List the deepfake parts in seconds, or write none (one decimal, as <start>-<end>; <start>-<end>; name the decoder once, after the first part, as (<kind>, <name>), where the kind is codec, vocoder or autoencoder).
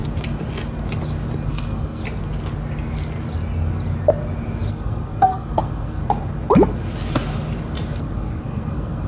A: 1.5-2.0 (codec, SNAC); 4.7-6.0; 8.0-9.1